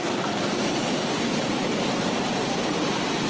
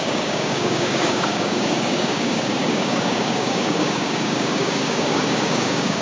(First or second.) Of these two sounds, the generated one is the second